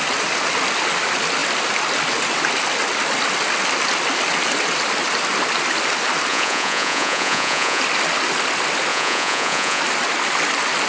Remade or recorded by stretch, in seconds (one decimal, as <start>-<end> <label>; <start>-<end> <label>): 0.0-6.3 recorded; 6.3-7.8 remade; 7.8-8.9 recorded; 8.9-9.8 remade; 9.8-10.9 recorded